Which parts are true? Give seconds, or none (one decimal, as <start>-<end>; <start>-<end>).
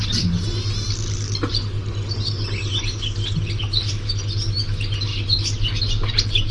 0.0-6.5